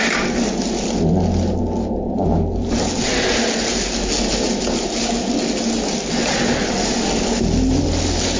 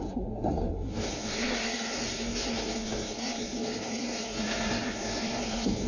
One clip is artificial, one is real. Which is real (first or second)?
first